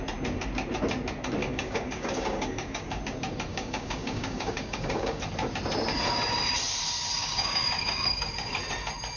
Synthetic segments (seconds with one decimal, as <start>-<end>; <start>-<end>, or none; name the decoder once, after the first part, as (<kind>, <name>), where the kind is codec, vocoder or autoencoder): 1.4-3.0 (codec, DAC); 3.5-5.2; 7.2-8.6